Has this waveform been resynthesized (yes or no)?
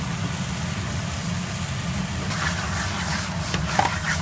yes